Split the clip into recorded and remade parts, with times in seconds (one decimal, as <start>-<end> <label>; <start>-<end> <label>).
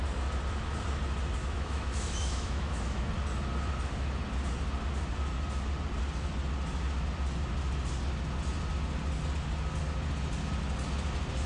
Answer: 0.0-1.4 recorded; 1.4-3.1 remade; 3.1-11.5 recorded